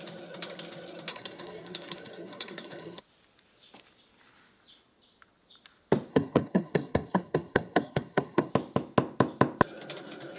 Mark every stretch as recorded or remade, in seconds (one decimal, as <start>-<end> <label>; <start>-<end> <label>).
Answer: 0.0-1.1 recorded; 1.1-3.0 remade; 3.0-6.1 recorded; 6.1-8.5 remade; 8.5-10.4 recorded